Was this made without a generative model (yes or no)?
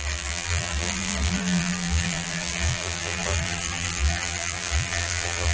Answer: no